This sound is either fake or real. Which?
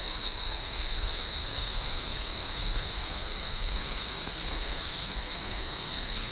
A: fake